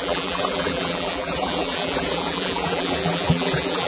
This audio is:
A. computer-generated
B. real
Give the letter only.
A